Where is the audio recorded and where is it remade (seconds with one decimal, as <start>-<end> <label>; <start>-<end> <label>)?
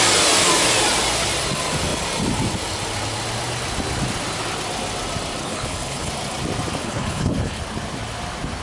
0.0-5.4 recorded; 5.4-6.1 remade; 6.1-6.8 recorded; 6.8-7.6 remade; 7.6-8.6 recorded